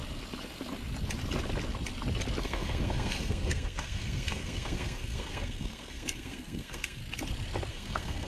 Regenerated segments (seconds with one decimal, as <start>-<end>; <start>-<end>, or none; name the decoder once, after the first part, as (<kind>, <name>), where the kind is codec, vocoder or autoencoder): 2.4-7.0 (codec, SNAC); 7.7-8.3